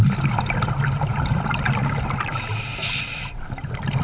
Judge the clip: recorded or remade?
recorded